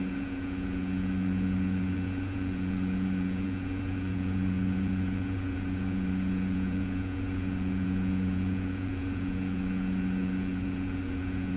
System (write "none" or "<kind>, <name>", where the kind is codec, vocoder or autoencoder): vocoder, Vocos